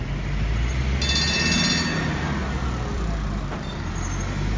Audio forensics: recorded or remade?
recorded